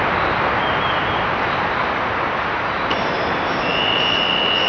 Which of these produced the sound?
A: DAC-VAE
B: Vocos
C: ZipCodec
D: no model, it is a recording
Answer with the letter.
D